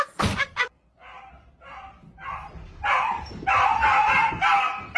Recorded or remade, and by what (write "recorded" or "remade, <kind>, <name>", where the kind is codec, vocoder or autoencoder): recorded